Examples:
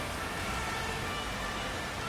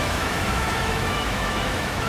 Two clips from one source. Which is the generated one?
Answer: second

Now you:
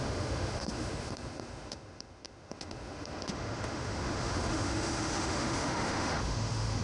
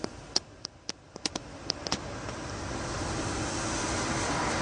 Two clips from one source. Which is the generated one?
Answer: first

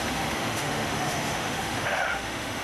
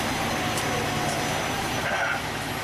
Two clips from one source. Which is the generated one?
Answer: first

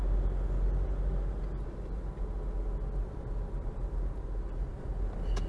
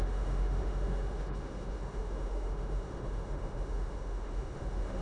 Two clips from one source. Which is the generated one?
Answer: second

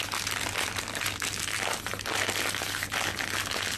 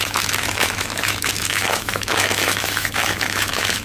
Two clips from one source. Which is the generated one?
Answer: second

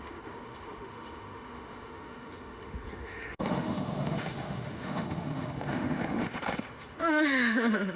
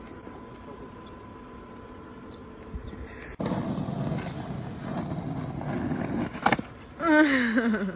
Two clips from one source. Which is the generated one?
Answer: first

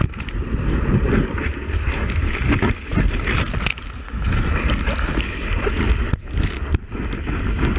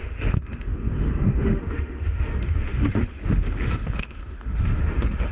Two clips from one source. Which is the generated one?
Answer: second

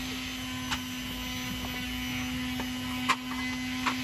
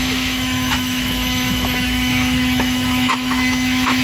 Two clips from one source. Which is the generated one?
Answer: second